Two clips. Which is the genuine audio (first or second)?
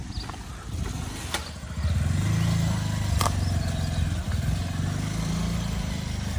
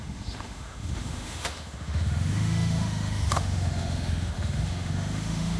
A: first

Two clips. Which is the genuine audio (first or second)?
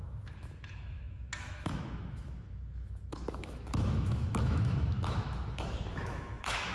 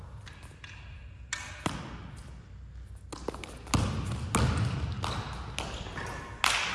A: second